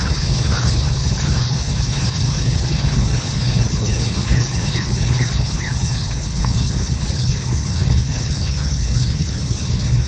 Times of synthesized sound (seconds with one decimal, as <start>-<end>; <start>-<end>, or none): 0.0-10.1